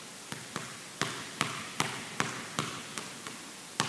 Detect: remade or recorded recorded